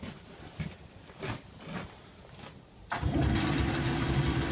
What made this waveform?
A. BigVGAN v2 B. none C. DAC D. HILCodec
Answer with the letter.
B